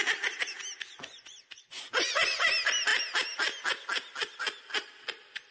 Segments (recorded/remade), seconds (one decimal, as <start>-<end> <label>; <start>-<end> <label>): 0.0-0.9 recorded; 0.9-2.5 remade; 2.5-5.5 recorded